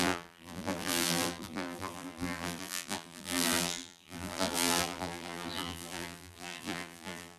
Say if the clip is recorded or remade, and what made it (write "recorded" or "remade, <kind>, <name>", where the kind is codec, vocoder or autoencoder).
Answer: remade, vocoder, BigVGAN v2